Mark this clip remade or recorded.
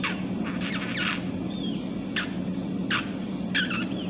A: recorded